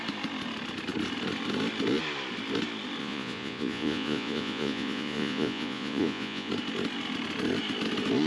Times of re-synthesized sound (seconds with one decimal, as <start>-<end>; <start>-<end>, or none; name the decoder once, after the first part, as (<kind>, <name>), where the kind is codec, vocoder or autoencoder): 3.0-6.5 (vocoder, Vocos)